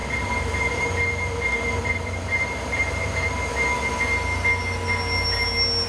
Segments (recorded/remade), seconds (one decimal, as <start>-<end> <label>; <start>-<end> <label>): 0.0-3.5 remade; 3.5-5.9 recorded

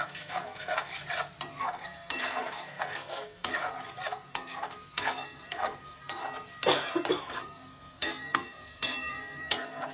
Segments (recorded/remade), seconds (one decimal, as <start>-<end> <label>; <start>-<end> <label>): 0.0-0.9 remade; 0.9-1.6 recorded; 1.6-3.5 remade; 3.5-4.1 recorded; 4.1-6.2 remade; 6.2-7.2 recorded; 7.2-9.9 remade